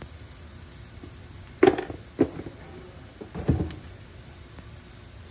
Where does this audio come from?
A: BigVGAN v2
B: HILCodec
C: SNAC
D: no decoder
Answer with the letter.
D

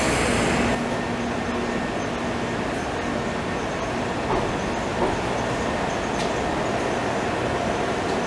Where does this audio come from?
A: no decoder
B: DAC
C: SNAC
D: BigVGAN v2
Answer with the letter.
A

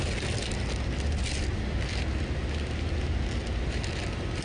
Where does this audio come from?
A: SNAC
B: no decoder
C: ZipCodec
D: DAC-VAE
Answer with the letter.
B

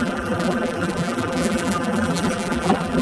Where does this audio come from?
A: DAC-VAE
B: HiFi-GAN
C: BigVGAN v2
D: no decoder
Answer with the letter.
C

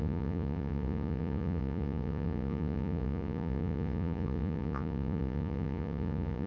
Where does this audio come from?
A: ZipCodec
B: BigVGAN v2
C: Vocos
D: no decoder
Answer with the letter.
C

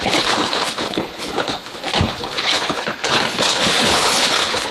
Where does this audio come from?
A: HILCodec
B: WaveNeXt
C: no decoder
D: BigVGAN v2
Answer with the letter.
A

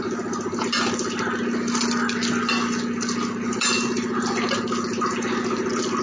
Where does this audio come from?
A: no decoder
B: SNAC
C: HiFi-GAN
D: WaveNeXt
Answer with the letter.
A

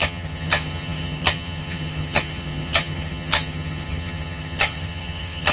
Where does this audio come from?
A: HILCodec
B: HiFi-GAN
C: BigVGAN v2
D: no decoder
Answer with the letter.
B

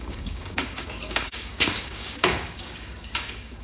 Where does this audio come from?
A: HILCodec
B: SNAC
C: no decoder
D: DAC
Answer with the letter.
D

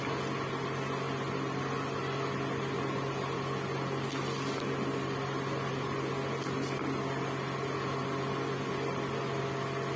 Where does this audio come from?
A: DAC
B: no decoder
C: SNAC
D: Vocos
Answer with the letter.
B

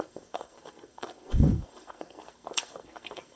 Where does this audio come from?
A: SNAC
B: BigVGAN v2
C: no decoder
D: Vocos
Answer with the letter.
A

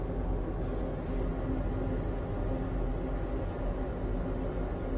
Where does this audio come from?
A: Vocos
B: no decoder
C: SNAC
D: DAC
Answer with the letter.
B